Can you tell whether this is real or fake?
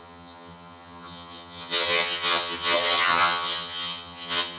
fake